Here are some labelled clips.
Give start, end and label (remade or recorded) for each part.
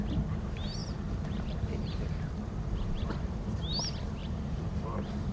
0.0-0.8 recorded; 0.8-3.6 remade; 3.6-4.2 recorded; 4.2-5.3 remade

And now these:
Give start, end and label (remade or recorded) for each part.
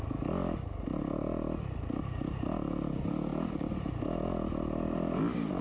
0.0-5.6 recorded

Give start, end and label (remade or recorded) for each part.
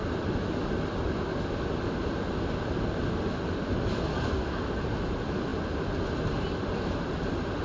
0.0-7.6 recorded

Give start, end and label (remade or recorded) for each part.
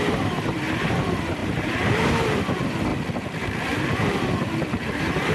0.0-5.3 remade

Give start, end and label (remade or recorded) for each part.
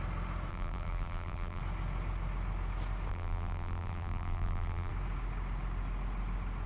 0.0-0.5 recorded; 0.5-1.6 remade; 1.6-3.1 recorded; 3.1-4.9 remade; 4.9-6.7 recorded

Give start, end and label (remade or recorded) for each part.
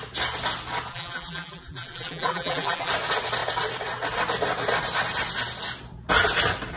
0.0-0.9 recorded; 0.9-2.9 remade; 2.9-6.8 recorded